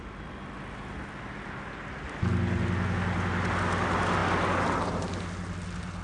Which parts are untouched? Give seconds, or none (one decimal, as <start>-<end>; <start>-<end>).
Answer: 0.0-6.0